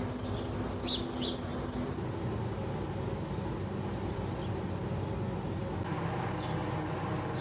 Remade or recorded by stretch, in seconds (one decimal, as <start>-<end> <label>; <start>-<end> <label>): 0.0-7.4 recorded